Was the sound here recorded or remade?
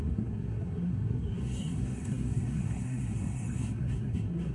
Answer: remade